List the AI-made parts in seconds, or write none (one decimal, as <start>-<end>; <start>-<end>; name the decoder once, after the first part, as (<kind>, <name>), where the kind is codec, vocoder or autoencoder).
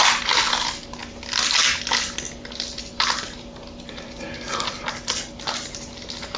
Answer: none